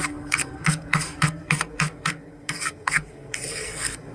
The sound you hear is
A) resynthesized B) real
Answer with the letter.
A